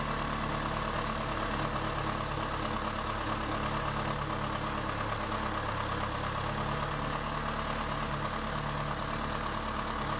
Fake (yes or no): no